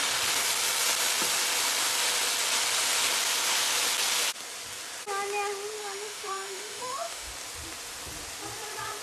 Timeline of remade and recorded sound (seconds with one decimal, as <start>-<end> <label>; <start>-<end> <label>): 0.0-5.8 recorded; 5.8-7.3 remade; 7.3-9.0 recorded